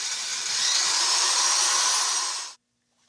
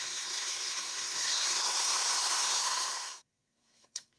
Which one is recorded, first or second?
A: first